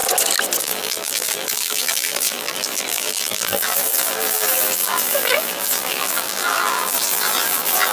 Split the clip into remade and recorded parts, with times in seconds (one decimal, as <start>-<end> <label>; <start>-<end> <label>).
0.0-0.6 recorded; 0.6-7.9 remade